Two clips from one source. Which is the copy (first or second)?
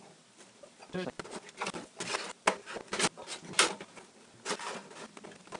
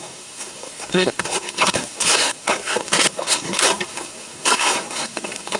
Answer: second